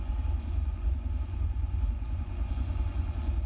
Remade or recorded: remade